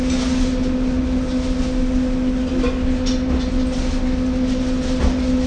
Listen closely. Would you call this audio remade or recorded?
recorded